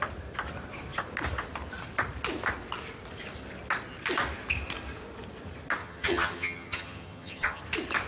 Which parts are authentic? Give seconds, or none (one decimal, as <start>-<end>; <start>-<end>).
0.0-5.8; 7.6-8.1